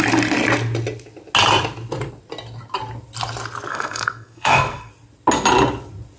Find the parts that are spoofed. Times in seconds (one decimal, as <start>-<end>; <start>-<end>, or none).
3.7-4.9